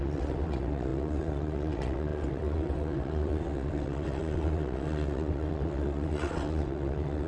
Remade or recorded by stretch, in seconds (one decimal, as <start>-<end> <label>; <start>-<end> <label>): 0.0-7.3 remade